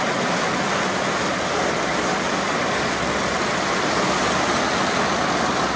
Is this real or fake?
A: real